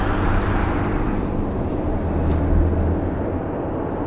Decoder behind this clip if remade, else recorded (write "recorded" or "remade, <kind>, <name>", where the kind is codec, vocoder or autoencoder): recorded